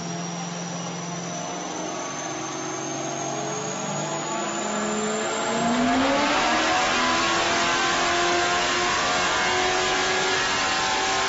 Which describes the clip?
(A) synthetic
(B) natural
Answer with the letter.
B